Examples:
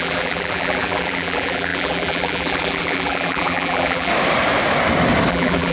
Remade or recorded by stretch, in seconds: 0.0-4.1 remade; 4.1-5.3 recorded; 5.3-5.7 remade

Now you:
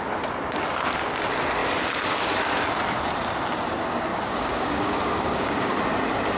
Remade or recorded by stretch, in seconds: 0.0-4.1 recorded; 4.1-5.8 remade; 5.8-6.4 recorded

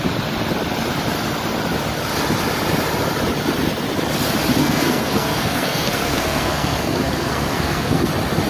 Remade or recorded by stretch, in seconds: 0.0-4.6 recorded; 4.6-8.1 remade; 8.1-8.5 recorded

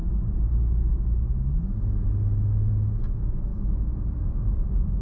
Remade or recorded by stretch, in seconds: 0.0-3.5 recorded; 3.5-4.4 remade; 4.4-5.0 recorded

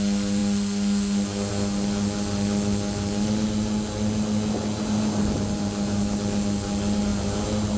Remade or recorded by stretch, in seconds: 0.0-7.8 recorded

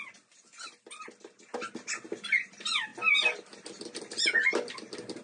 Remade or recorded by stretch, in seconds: 0.0-5.2 recorded